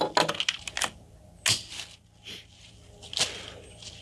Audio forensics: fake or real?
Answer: real